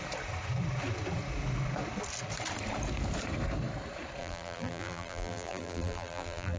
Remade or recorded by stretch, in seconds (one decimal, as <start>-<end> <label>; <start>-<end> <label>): 0.0-4.2 recorded; 4.2-6.6 remade